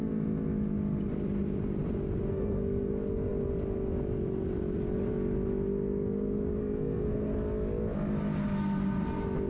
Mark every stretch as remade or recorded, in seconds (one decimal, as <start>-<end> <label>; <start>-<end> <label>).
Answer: 0.0-2.3 recorded; 2.3-2.9 remade; 2.9-6.6 recorded; 6.6-7.3 remade; 7.3-9.5 recorded